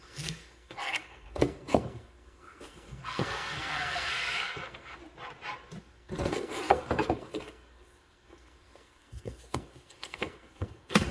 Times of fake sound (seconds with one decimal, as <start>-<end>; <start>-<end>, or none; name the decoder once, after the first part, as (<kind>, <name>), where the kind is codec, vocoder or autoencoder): 0.0-5.0 (codec, SNAC); 5.8-11.1